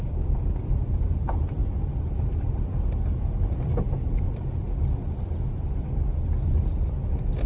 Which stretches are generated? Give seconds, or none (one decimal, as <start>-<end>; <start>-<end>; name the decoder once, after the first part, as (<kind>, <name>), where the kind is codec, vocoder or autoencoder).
0.0-5.0 (vocoder, BigVGAN v2); 5.7-7.5